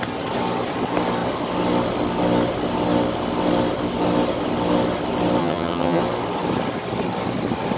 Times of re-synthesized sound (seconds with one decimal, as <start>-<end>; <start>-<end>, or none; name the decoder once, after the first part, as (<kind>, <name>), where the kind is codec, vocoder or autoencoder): 5.4-6.0 (vocoder, HiFi-GAN)